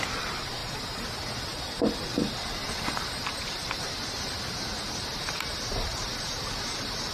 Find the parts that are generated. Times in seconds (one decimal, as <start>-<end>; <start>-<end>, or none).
0.6-1.2; 2.6-7.1